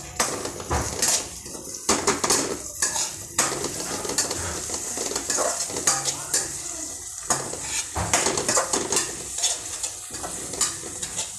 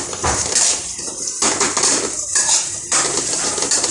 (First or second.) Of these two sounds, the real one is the first